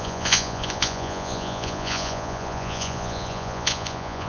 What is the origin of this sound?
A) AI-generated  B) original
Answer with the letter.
A